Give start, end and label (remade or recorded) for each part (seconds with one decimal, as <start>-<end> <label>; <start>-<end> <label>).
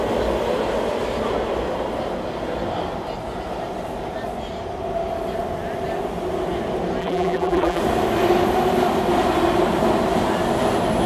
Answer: 0.0-7.0 recorded; 7.0-7.8 remade; 7.8-11.1 recorded